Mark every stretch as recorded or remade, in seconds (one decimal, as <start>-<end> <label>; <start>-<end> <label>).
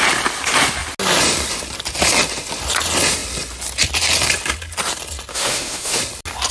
0.0-5.3 recorded; 5.3-6.0 remade; 6.0-6.5 recorded